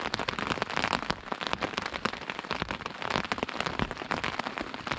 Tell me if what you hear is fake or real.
real